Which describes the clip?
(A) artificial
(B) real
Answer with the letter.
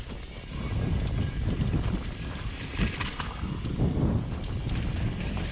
B